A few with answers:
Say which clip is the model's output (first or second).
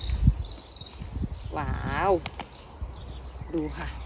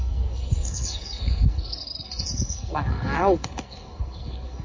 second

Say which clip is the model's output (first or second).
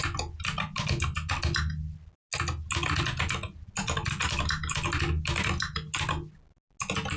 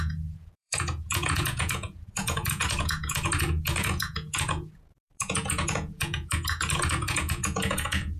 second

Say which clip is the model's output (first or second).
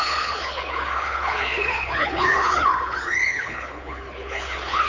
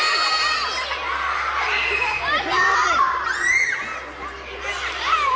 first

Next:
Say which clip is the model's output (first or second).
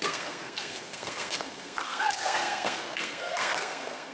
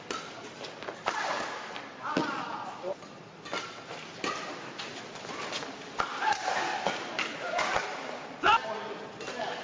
first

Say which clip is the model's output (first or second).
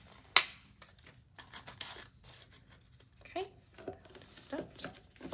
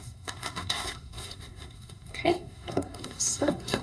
second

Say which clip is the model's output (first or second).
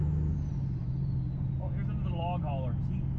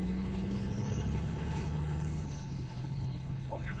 second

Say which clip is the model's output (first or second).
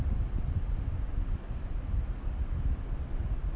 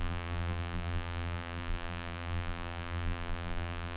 second